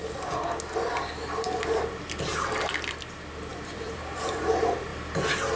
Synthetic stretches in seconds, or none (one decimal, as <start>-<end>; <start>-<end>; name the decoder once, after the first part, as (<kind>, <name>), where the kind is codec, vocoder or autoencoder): 1.2-2.2 (vocoder, BigVGAN v2); 3.5-4.4; 4.9-5.6